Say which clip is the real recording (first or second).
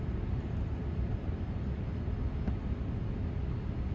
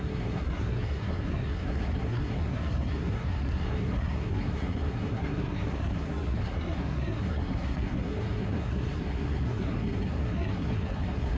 first